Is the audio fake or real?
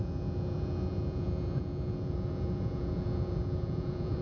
fake